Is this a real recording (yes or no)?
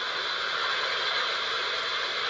yes